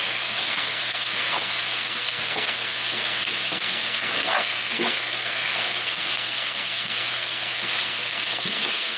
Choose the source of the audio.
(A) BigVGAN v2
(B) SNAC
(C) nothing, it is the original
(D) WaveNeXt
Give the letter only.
B